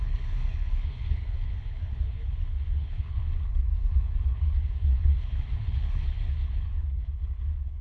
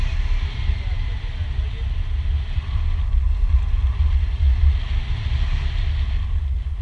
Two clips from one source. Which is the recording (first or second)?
second